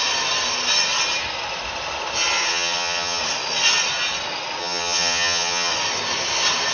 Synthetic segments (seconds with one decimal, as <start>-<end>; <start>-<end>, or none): 2.5-3.2; 4.6-5.7